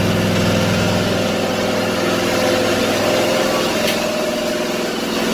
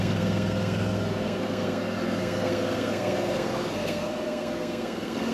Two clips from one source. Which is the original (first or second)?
first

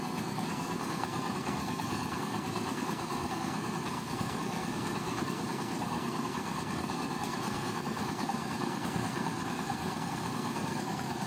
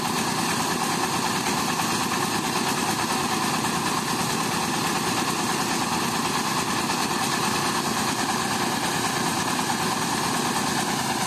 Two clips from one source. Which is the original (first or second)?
second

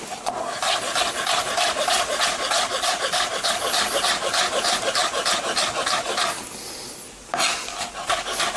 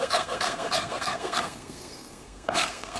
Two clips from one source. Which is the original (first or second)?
first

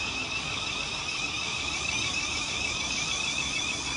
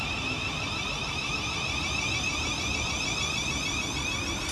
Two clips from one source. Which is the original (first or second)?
second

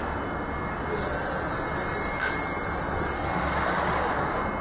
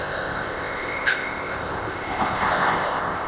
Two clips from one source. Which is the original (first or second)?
first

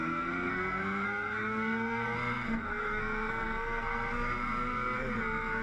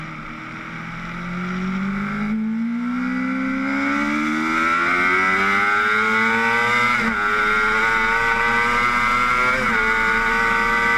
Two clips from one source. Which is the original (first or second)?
second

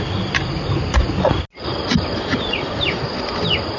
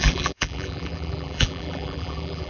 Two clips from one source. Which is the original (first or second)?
first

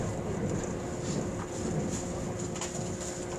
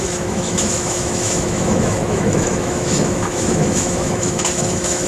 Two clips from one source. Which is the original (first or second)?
first